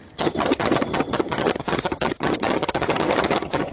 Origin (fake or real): fake